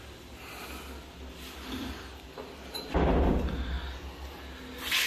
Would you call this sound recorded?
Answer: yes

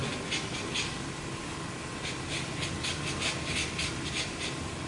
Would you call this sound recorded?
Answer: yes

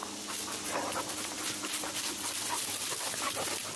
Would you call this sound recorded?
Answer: yes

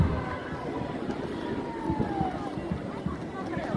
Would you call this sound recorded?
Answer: yes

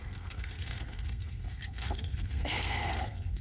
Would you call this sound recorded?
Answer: no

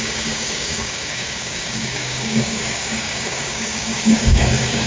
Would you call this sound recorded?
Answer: no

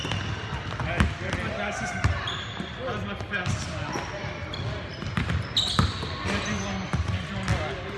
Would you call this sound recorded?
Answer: yes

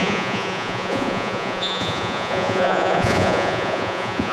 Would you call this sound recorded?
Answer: no